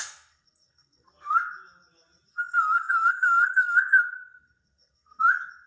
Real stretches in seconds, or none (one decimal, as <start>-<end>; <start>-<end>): 1.5-2.3; 5.2-5.7